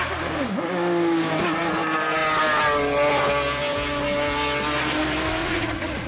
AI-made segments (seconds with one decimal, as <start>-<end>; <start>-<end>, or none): 5.4-6.1